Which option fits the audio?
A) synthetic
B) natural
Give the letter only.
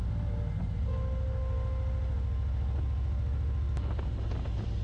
B